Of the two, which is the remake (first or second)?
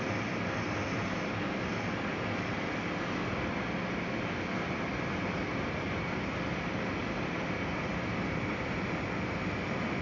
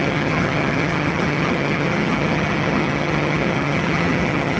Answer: second